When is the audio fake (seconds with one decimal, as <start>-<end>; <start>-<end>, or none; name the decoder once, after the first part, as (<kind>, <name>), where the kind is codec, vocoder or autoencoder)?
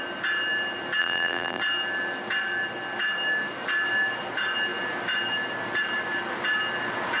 1.0-1.6 (vocoder, BigVGAN v2)